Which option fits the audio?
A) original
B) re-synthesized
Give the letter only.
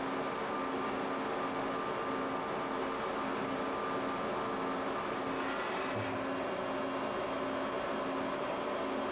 A